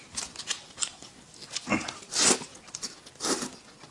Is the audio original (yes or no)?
yes